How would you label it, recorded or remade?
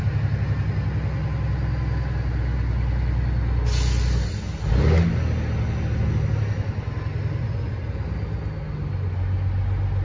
recorded